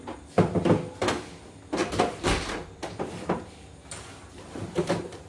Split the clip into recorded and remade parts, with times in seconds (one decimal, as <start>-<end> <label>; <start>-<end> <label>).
0.0-4.2 recorded; 4.2-5.3 remade